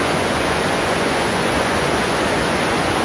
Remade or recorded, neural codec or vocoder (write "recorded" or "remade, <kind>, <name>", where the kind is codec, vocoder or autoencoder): remade, vocoder, Vocos